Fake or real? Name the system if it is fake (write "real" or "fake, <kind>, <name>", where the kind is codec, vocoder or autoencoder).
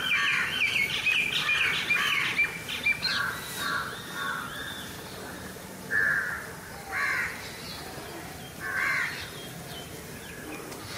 real